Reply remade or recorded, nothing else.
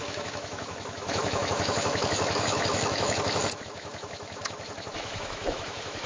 remade